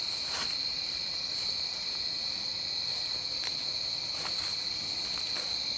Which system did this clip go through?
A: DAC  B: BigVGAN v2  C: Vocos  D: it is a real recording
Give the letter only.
D